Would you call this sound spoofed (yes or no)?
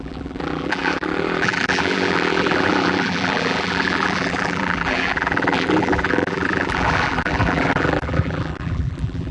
yes